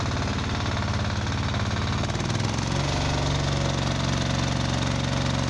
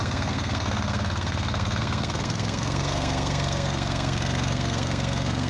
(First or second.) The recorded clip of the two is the first